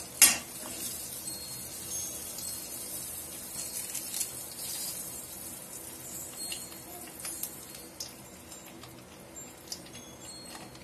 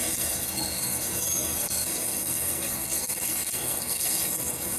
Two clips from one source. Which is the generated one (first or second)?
second